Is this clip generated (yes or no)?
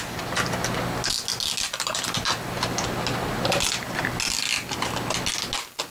no